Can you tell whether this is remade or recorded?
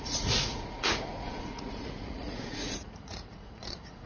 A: remade